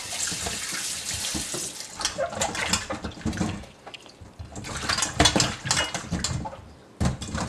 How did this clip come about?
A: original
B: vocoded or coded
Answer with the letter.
A